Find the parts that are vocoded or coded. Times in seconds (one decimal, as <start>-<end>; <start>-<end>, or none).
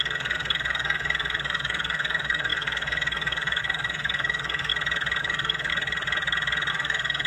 0.0-4.7; 5.2-5.7; 6.7-7.3